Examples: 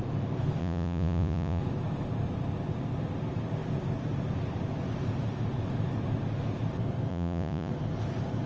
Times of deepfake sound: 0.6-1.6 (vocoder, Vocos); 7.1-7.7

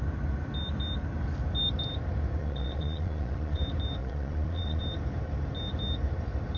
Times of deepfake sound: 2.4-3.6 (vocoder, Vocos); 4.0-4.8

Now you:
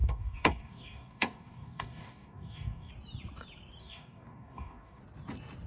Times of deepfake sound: 0.0-2.9 (codec, DAC); 3.8-5.0

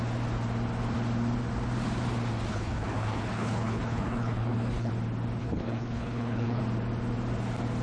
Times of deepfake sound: 2.5-4.9 (codec, HILCodec); 5.4-6.6